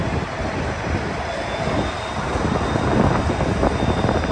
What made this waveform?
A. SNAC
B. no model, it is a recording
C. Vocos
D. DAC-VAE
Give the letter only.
B